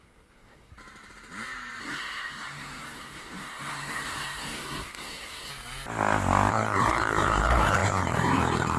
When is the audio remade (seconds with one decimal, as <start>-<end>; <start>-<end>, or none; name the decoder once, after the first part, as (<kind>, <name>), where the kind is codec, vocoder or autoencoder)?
0.0-0.7 (codec, SNAC); 1.8-5.5; 6.5-8.8